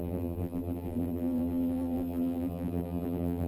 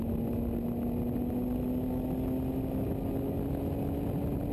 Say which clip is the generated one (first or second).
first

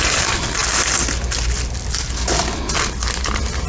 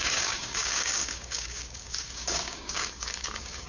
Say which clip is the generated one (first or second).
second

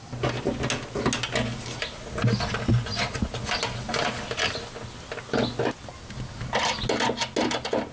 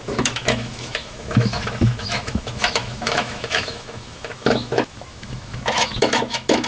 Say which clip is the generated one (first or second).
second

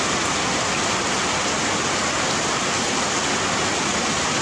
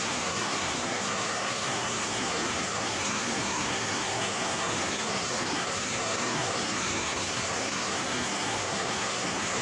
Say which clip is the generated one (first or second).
second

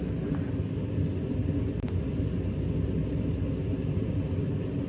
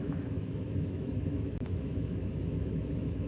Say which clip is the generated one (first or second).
second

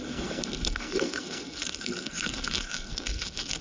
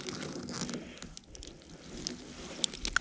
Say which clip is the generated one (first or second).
first